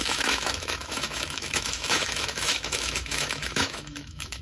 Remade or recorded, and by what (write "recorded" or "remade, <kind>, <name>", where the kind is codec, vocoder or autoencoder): remade, autoencoder, DAC-VAE